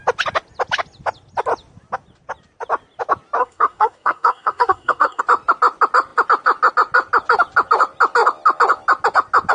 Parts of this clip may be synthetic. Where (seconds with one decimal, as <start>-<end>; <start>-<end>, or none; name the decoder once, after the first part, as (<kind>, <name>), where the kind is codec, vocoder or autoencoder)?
3.4-5.2 (codec, SNAC)